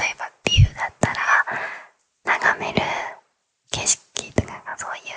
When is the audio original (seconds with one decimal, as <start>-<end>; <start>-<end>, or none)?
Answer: 0.0-3.1; 4.3-4.7